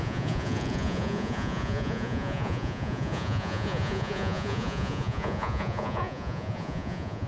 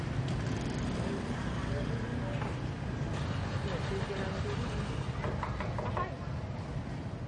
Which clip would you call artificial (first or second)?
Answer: first